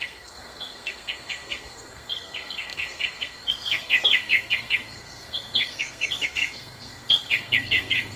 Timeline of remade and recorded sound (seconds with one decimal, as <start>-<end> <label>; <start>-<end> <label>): 0.0-8.2 remade